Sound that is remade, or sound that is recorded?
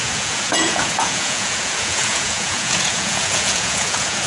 remade